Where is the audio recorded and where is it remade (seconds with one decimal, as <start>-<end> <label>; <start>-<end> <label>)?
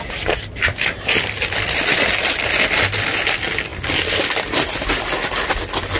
0.0-6.0 recorded